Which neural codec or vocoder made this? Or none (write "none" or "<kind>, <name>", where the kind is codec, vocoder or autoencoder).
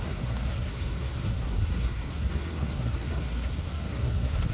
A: codec, SNAC